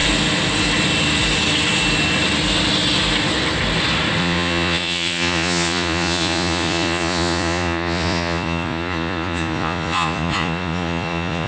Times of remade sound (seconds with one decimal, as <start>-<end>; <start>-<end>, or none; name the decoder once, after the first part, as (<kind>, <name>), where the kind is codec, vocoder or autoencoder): 4.2-11.5 (vocoder, Vocos)